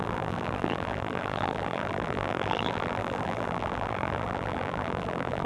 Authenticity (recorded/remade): remade